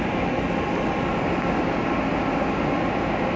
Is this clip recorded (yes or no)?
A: yes